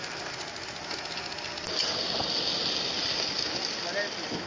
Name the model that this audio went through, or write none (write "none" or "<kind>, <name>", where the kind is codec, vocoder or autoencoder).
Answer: none